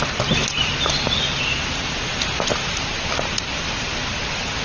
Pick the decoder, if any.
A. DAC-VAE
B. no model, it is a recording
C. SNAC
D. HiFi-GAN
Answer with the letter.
B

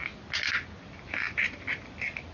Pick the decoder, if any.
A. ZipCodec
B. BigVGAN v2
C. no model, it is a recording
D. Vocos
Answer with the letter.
C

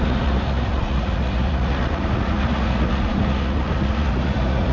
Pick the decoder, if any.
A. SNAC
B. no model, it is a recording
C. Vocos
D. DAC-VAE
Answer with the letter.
C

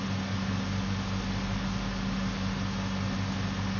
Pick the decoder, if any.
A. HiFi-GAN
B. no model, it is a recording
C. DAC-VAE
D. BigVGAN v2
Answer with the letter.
B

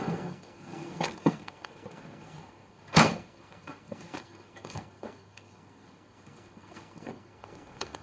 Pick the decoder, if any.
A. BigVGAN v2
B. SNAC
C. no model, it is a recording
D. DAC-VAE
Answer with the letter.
B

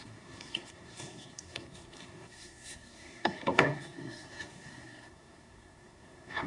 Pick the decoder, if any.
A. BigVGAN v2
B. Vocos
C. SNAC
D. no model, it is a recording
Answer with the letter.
C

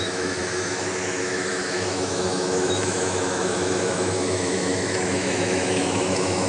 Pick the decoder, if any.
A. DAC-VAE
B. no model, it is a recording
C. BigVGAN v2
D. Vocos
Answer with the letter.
A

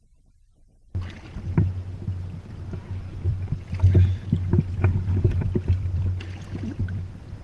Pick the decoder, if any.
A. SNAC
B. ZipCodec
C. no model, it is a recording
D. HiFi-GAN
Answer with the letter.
C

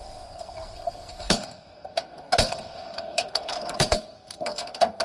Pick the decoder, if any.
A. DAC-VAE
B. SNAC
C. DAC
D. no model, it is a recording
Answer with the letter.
B